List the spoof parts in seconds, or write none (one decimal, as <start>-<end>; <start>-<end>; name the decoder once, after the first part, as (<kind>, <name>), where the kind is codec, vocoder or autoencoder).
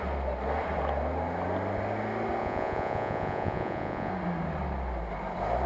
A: 2.4-4.1 (vocoder, Vocos)